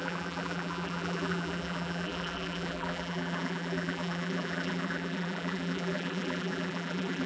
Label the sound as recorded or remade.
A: remade